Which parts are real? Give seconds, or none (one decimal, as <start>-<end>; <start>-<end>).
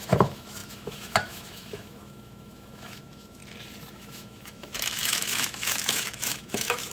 3.4-3.9